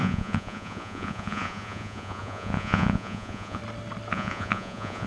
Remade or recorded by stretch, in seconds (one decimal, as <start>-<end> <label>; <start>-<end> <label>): 0.0-3.6 remade; 3.6-4.1 recorded; 4.1-5.1 remade